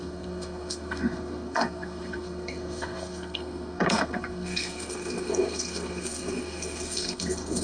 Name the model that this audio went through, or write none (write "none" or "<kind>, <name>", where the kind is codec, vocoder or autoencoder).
codec, SNAC